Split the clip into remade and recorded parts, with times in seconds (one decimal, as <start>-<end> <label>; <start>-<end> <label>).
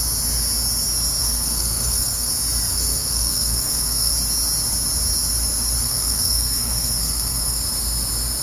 0.0-1.2 recorded; 1.2-2.3 remade; 2.3-2.7 recorded; 2.7-4.1 remade; 4.1-5.8 recorded; 5.8-7.6 remade; 7.6-8.4 recorded